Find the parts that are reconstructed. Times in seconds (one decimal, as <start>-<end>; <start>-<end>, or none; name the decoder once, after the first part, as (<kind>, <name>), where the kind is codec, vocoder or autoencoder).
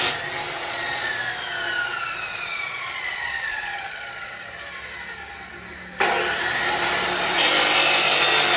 0.6-1.1 (vocoder, Vocos); 2.3-4.3